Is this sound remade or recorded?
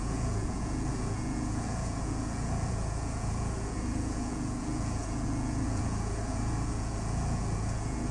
remade